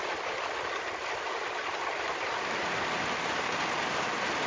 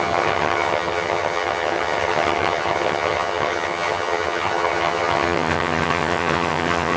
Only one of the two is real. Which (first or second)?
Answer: first